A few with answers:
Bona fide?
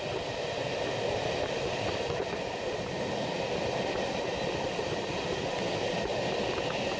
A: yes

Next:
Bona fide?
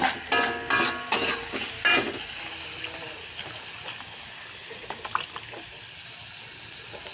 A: yes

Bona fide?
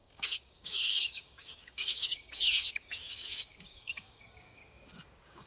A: no